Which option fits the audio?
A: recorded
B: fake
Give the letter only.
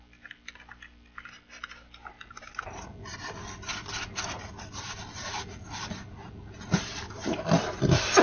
A